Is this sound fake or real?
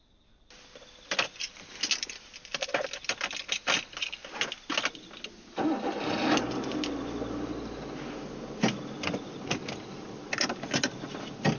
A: real